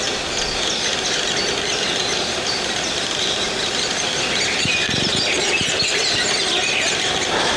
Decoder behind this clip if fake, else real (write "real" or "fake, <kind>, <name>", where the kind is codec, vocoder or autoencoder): real